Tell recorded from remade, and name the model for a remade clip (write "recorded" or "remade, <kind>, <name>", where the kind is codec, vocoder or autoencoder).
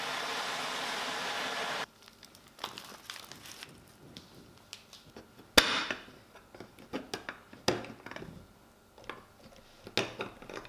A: recorded